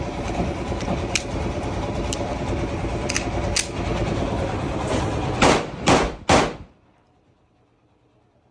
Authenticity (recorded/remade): remade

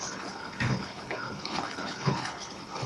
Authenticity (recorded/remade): remade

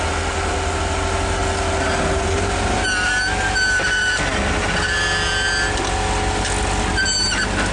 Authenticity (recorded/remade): recorded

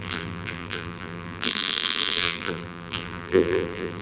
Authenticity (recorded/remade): remade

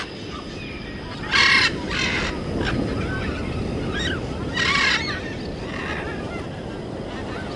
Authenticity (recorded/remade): recorded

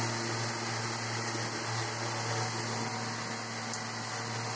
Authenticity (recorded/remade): recorded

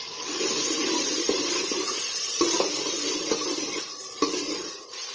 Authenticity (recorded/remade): remade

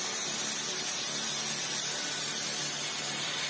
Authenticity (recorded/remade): recorded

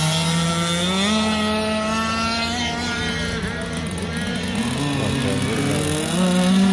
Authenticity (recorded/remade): recorded